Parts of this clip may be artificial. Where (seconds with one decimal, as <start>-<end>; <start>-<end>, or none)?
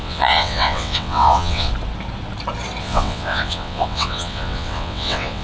0.0-1.7; 2.8-5.4